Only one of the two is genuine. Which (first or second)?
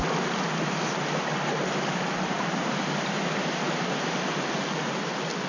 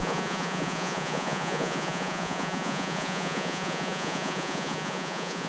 first